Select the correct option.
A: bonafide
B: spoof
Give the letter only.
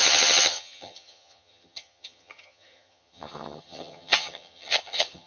B